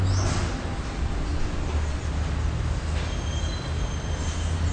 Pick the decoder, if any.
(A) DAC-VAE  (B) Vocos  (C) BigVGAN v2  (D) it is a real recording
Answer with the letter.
D